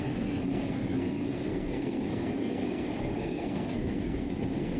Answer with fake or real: fake